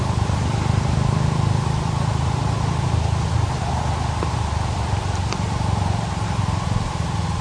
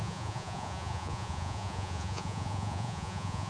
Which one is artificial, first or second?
second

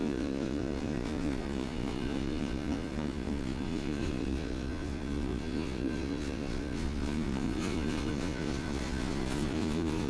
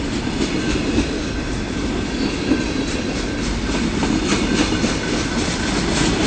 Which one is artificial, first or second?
first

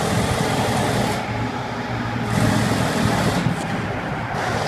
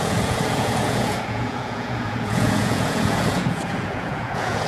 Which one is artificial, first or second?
second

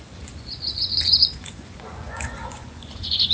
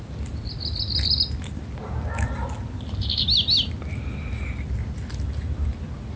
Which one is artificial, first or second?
first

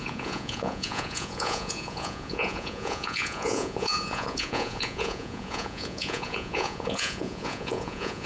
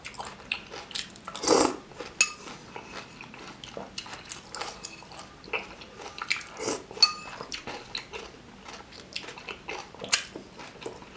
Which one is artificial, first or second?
first